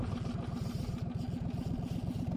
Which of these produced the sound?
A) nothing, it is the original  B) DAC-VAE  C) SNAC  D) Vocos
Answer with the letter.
A